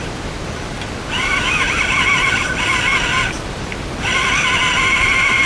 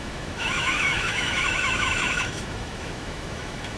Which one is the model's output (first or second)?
second